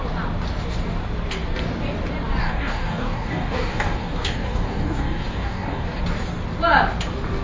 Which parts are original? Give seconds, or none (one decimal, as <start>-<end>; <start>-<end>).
0.0-2.4; 6.0-7.4